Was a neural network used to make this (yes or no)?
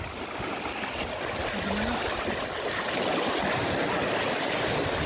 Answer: no